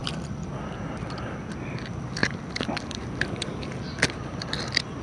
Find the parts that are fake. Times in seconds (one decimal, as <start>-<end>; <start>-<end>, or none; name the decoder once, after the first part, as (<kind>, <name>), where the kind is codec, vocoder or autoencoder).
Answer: 0.0-0.5 (vocoder, BigVGAN v2); 2.2-5.0